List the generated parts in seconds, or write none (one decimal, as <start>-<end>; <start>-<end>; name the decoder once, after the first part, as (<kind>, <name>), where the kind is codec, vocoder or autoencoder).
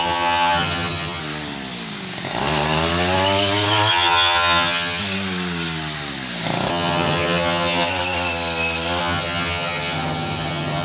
0.0-1.2 (vocoder, HiFi-GAN); 3.9-5.0; 6.7-7.9; 9.0-10.8